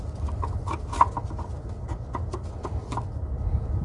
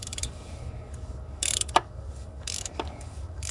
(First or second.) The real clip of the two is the first